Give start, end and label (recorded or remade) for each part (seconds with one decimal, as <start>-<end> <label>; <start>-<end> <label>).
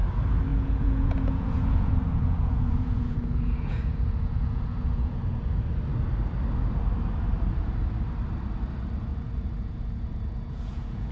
0.0-0.5 recorded; 0.5-5.2 remade; 5.2-9.1 recorded; 9.1-11.1 remade